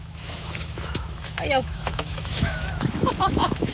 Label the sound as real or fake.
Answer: fake